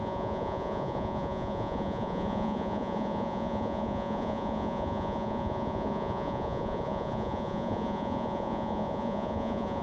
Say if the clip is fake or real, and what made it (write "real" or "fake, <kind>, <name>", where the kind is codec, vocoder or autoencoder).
fake, vocoder, Vocos